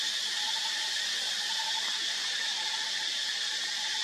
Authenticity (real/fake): real